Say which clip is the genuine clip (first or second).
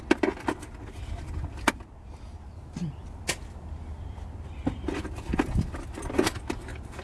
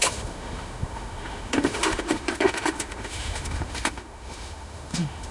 first